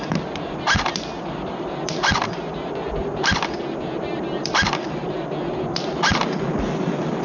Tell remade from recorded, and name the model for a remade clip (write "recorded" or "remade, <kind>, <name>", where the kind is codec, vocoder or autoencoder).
remade, vocoder, BigVGAN v2